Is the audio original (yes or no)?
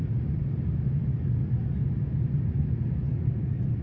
yes